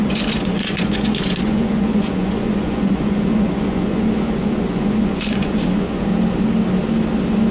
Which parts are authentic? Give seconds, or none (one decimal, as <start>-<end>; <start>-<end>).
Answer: 6.1-7.5